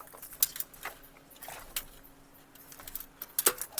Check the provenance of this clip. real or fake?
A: real